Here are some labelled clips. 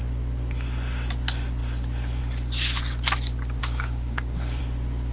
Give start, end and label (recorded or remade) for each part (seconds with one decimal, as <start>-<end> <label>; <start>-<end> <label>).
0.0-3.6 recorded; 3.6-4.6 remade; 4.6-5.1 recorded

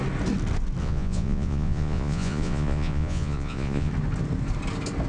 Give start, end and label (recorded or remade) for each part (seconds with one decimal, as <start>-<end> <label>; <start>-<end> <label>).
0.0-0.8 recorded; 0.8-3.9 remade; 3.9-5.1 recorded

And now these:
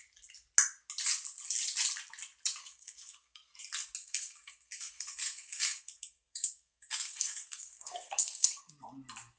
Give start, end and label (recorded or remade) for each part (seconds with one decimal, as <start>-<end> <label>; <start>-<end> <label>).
0.0-2.6 recorded; 2.6-3.6 remade; 3.6-4.0 recorded; 4.0-8.7 remade; 8.7-9.4 recorded

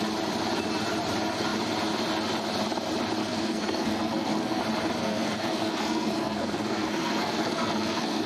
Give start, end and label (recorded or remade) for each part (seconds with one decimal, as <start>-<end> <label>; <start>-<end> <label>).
0.0-3.2 recorded; 3.2-4.6 remade; 4.6-5.0 recorded; 5.0-8.3 remade

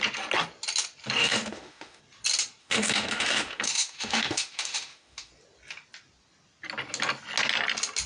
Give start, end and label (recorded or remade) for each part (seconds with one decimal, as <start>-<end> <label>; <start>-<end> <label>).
0.0-1.2 recorded; 1.2-2.0 remade; 2.0-2.6 recorded; 2.6-5.3 remade; 5.3-8.1 recorded

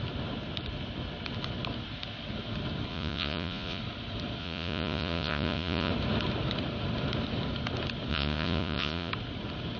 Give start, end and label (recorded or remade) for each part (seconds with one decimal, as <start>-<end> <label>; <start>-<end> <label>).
0.0-2.9 recorded; 2.9-3.8 remade; 3.8-4.4 recorded; 4.4-5.9 remade; 5.9-8.1 recorded; 8.1-9.1 remade; 9.1-9.8 recorded

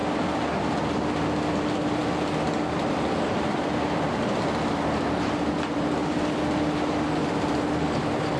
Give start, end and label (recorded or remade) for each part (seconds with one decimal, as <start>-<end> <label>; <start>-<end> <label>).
0.0-8.4 recorded

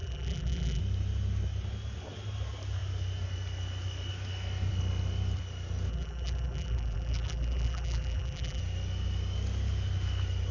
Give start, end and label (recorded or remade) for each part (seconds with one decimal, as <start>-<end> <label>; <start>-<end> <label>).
0.0-0.8 remade; 0.8-5.9 recorded; 5.9-8.6 remade; 8.6-10.5 recorded